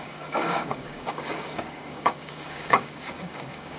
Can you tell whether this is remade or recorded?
remade